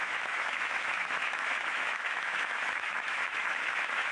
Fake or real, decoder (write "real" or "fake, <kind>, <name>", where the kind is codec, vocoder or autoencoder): fake, autoencoder, DAC-VAE